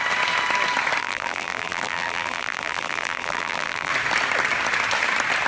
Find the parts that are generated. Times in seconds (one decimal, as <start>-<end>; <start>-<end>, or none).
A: 1.0-3.9